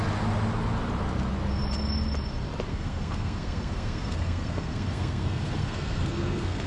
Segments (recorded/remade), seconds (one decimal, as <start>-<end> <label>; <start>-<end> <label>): 0.0-2.7 recorded; 2.7-6.7 remade